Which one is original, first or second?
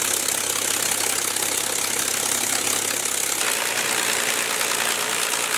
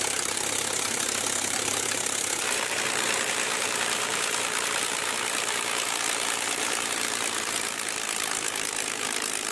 first